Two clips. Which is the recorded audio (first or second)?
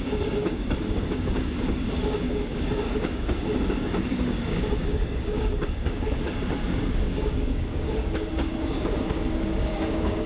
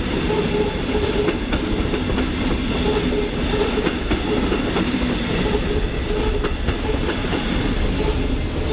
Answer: second